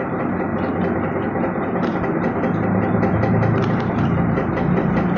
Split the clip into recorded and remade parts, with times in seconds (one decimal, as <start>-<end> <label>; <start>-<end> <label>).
0.0-5.2 recorded